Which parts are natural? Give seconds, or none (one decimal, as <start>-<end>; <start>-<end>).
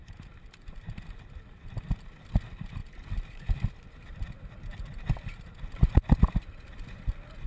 0.0-7.5